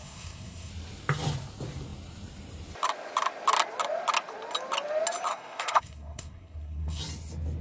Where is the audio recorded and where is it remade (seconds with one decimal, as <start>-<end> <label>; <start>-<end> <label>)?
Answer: 0.0-0.7 remade; 0.7-5.3 recorded; 5.3-7.0 remade; 7.0-7.6 recorded